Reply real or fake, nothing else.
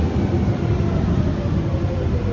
real